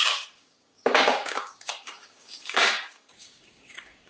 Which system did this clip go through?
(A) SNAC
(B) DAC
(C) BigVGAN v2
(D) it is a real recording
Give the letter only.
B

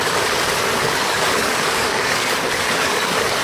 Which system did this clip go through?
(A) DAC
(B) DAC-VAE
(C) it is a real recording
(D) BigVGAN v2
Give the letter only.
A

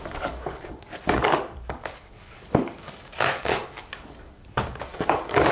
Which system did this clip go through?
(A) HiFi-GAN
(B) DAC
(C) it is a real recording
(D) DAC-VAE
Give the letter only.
B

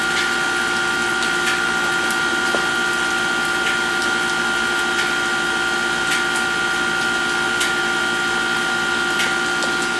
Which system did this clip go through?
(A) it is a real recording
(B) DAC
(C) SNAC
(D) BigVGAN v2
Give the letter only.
A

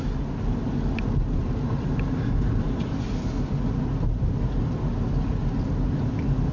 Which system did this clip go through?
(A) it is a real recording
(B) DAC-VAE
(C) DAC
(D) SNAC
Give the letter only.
A